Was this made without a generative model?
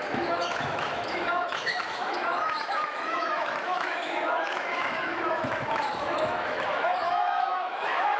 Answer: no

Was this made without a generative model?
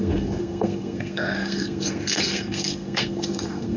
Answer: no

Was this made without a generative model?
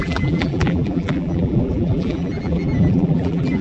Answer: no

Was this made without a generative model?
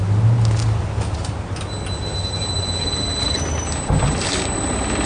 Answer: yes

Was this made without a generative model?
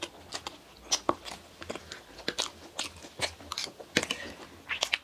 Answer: yes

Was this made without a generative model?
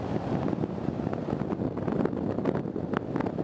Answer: yes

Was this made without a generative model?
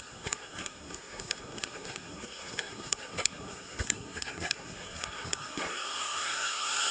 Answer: no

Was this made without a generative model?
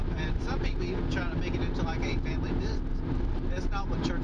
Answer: yes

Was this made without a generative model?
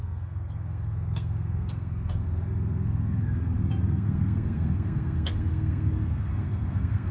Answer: no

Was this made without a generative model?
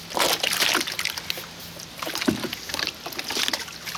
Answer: yes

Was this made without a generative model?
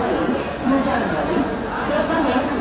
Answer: no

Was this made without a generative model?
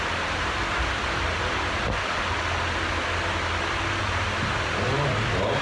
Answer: yes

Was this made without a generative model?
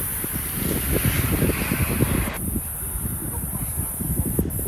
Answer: yes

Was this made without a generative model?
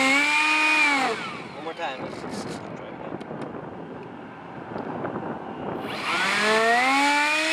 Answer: yes